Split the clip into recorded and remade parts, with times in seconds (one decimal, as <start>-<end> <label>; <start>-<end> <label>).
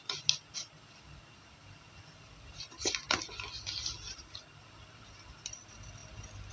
0.0-6.5 recorded